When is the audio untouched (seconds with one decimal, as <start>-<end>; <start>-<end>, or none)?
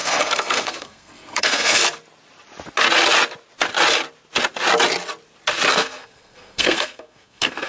1.8-5.7